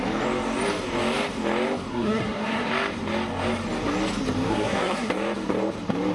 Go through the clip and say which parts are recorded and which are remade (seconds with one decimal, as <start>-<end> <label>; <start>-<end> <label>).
0.0-1.9 recorded; 1.9-2.7 remade; 2.7-4.5 recorded; 4.5-5.1 remade; 5.1-6.1 recorded